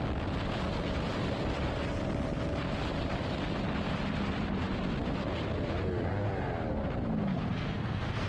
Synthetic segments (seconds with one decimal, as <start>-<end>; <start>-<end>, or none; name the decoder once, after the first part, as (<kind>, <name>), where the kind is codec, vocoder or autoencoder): 7.2-8.3 (codec, SNAC)